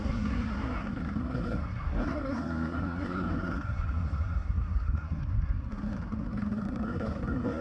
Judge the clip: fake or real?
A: fake